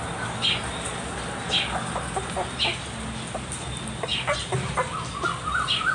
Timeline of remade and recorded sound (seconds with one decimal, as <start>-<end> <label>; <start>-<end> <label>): 0.0-5.9 recorded